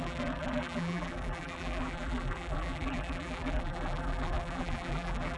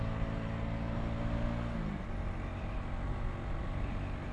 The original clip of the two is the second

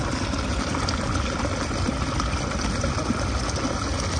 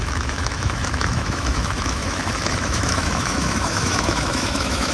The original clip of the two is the first